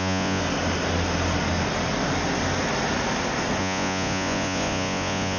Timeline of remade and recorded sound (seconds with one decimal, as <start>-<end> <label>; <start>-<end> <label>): 0.0-0.4 remade; 0.4-3.6 recorded; 3.6-5.4 remade